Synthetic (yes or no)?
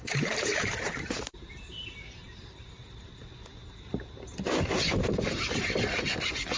yes